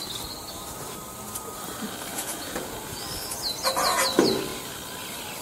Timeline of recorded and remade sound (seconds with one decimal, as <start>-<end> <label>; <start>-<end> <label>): 0.0-2.1 recorded; 2.1-3.0 remade; 3.0-5.4 recorded